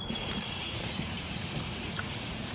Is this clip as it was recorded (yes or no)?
no